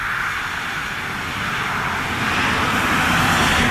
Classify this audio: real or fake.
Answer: real